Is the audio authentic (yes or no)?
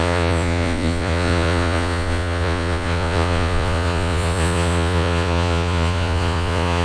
no